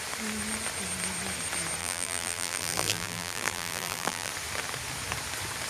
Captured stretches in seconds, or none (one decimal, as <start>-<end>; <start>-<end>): 0.0-1.8; 4.3-5.7